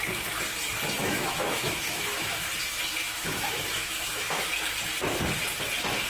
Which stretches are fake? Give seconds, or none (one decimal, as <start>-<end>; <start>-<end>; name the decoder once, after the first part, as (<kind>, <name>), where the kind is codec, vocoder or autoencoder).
1.0-2.5 (autoencoder, DAC-VAE); 3.0-4.5